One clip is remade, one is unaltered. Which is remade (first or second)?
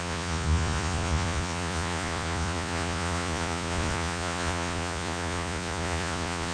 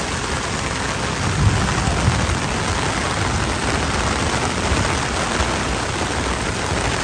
first